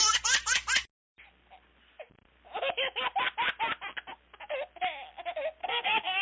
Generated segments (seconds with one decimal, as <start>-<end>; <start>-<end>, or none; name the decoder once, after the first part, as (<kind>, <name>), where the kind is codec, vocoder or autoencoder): 5.6-6.2 (codec, SNAC)